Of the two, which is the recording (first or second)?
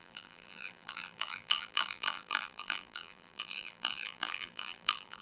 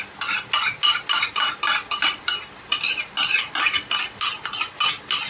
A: second